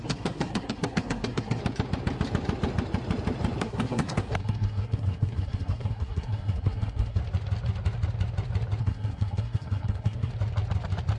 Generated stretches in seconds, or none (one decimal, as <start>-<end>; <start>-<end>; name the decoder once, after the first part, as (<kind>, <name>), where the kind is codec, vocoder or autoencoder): 0.0-1.6 (codec, SNAC); 3.6-7.2; 8.8-10.3